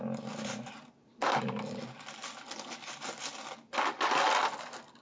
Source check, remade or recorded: recorded